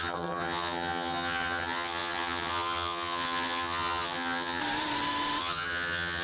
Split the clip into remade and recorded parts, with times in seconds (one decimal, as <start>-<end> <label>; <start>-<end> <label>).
0.0-4.6 remade; 4.6-5.4 recorded; 5.4-6.2 remade